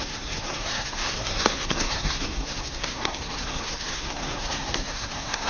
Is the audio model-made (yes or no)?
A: yes